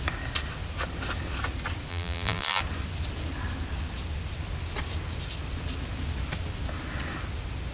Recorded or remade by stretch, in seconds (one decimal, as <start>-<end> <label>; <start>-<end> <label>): 0.0-1.9 recorded; 1.9-2.6 remade; 2.6-7.7 recorded